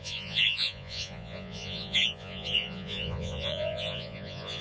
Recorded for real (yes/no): no